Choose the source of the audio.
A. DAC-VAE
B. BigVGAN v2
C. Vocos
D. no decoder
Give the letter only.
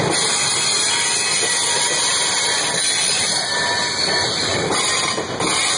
D